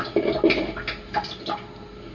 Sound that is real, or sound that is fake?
real